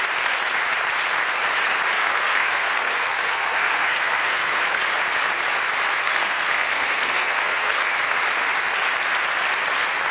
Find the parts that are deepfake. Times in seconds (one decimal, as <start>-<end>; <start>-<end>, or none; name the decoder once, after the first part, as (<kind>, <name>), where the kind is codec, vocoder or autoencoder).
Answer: 2.0-4.8 (codec, SNAC); 5.9-8.2